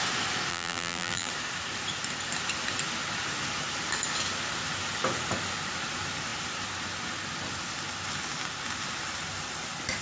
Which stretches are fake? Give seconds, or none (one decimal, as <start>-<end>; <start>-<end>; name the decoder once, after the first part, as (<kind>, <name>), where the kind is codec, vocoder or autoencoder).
0.5-1.3 (vocoder, BigVGAN v2)